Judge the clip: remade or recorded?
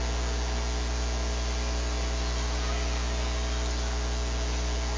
recorded